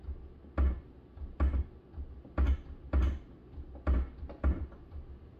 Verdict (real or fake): real